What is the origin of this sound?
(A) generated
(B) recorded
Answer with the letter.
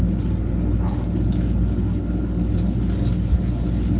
B